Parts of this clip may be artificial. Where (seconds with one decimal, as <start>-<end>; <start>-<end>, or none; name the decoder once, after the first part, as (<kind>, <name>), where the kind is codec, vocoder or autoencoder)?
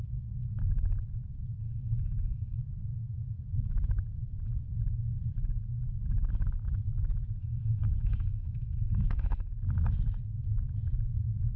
1.6-2.6 (codec, SNAC); 7.4-9.5